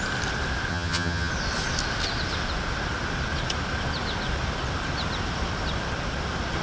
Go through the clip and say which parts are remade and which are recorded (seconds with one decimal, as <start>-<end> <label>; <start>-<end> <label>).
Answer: 0.0-0.7 recorded; 0.7-1.3 remade; 1.3-6.6 recorded